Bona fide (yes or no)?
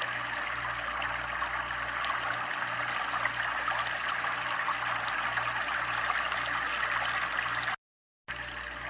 yes